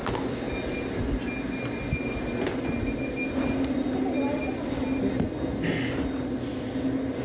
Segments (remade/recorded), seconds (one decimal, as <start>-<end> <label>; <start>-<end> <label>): 0.0-7.2 recorded

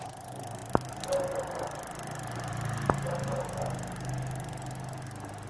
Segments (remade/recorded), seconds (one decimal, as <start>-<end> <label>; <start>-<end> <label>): 0.0-5.5 recorded

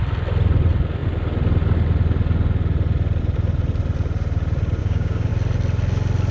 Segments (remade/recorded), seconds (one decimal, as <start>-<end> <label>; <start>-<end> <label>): 0.0-4.8 recorded; 4.8-5.3 remade; 5.3-6.3 recorded

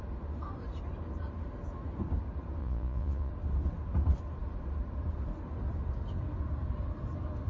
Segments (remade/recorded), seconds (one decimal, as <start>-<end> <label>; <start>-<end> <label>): 0.0-2.6 recorded; 2.6-3.3 remade; 3.3-7.5 recorded

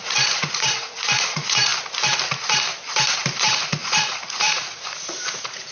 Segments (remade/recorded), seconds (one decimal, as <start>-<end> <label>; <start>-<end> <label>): 0.0-1.7 remade; 1.7-3.4 recorded; 3.4-5.7 remade